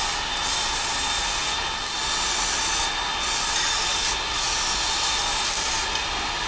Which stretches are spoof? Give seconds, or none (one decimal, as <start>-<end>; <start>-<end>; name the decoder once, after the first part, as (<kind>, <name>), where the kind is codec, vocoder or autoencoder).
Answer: none